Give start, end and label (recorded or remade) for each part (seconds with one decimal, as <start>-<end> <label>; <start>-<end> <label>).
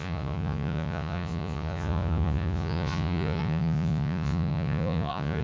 0.0-5.4 remade